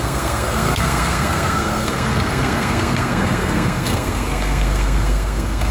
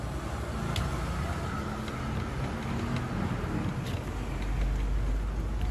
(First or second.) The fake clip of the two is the first